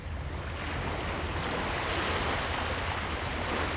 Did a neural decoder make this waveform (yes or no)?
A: no